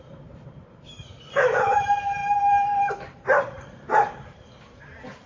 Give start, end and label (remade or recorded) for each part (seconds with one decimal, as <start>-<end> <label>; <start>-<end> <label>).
0.0-2.2 remade; 2.2-2.8 recorded; 2.8-5.3 remade